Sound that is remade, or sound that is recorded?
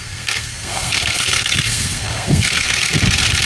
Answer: remade